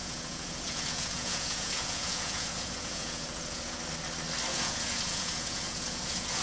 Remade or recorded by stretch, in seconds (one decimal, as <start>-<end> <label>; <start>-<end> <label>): 0.0-3.8 remade; 3.8-4.5 recorded; 4.5-6.4 remade